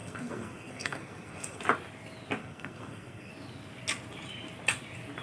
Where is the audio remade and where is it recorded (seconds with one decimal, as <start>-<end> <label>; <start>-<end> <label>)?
0.0-1.6 remade; 1.6-2.4 recorded; 2.4-3.3 remade; 3.3-5.2 recorded